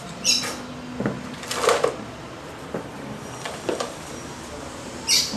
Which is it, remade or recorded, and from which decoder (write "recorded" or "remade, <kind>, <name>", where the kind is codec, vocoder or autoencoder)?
remade, vocoder, BigVGAN v2